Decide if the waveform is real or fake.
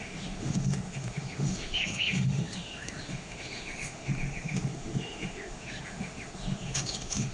fake